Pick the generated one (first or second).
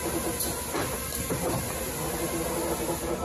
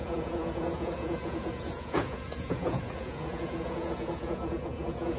second